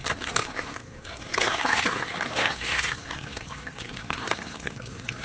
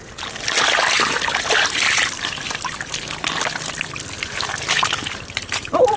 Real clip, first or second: second